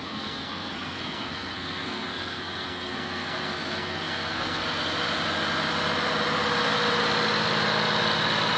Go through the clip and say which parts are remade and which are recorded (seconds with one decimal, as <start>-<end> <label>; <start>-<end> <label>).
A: 0.0-4.6 remade; 4.6-8.6 recorded